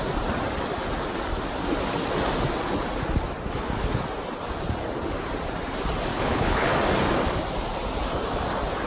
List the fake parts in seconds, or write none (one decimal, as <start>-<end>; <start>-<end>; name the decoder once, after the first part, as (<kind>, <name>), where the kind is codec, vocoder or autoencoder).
6.1-6.7 (codec, HILCodec)